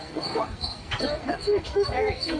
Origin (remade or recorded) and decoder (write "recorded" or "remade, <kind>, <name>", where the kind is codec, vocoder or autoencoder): remade, codec, SNAC